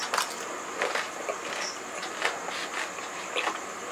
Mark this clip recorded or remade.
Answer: recorded